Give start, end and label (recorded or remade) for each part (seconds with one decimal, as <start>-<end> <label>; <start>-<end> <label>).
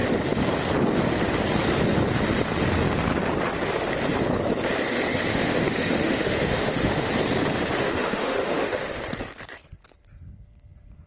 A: 0.0-5.3 recorded; 5.3-7.1 remade; 7.1-7.8 recorded; 7.8-9.0 remade; 9.0-11.1 recorded